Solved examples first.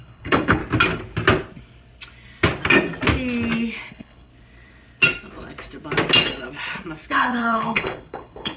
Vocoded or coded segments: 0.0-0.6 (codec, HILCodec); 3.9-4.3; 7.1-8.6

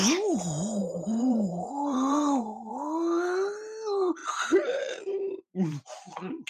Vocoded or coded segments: 0.8-2.7 (vocoder, BigVGAN v2); 4.2-5.0; 5.5-6.1

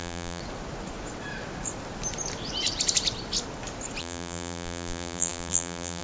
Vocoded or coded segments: 0.0-0.4 (vocoder, BigVGAN v2); 4.0-6.0